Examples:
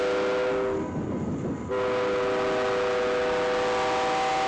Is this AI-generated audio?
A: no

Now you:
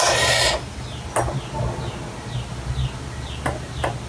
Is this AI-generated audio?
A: no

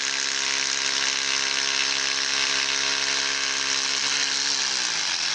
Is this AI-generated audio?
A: no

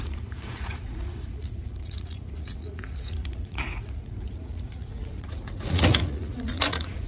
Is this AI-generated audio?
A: yes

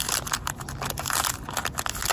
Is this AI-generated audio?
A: no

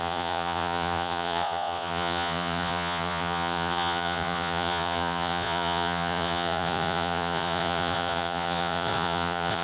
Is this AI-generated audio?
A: yes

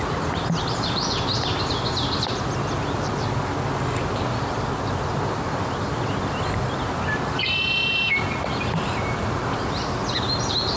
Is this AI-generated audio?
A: no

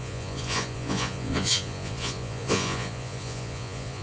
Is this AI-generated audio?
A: yes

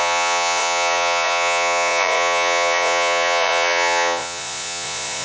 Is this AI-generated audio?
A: yes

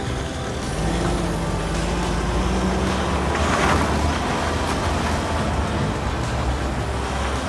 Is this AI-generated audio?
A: no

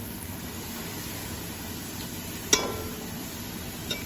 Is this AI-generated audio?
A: no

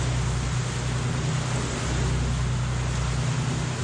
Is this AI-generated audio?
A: no